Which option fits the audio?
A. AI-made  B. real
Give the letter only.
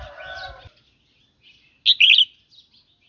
B